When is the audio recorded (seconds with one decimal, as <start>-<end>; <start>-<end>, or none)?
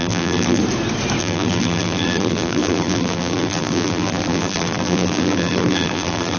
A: 0.6-1.2